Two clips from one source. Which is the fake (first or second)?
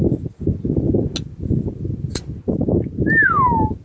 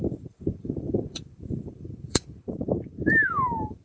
second